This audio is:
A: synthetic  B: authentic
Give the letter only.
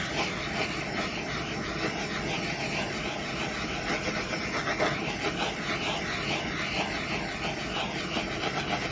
B